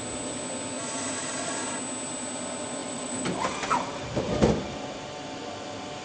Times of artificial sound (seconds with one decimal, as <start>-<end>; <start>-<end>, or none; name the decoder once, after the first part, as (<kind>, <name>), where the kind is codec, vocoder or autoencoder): 2.8-4.7 (vocoder, BigVGAN v2)